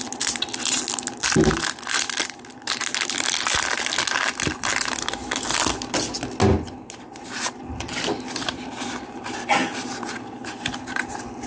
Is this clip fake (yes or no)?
no